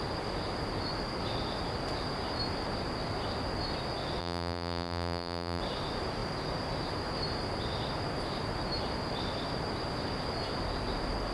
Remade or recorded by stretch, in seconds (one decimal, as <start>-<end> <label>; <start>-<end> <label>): 0.0-4.2 recorded; 4.2-5.6 remade; 5.6-11.3 recorded

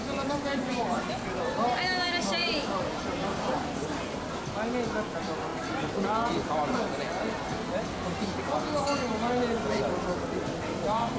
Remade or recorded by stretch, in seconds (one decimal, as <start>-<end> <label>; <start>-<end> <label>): 0.0-0.5 recorded; 0.5-1.4 remade; 1.4-2.4 recorded; 2.4-4.4 remade; 4.4-11.2 recorded

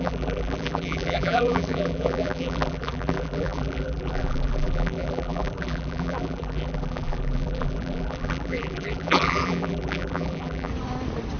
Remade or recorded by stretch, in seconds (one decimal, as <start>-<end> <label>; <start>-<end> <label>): 0.0-10.7 remade; 10.7-11.4 recorded

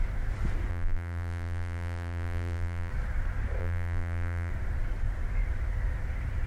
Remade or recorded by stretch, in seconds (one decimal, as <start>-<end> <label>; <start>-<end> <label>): 0.0-0.7 recorded; 0.7-2.9 remade; 2.9-3.6 recorded; 3.6-4.5 remade; 4.5-6.5 recorded

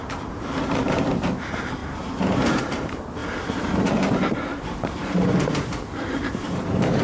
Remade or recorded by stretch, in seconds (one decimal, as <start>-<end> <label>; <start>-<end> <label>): 0.0-1.8 remade; 1.8-2.6 recorded; 2.6-3.2 remade; 3.2-3.9 recorded; 3.9-7.0 remade

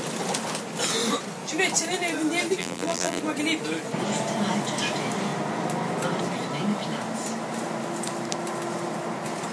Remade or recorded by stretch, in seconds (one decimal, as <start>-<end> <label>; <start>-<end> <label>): 0.0-2.6 recorded; 2.6-3.2 remade; 3.2-9.5 recorded